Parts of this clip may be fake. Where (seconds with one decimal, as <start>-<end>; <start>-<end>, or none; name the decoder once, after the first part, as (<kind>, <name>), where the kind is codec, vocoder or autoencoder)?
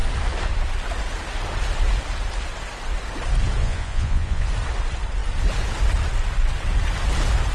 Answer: 3.6-4.5 (vocoder, Vocos)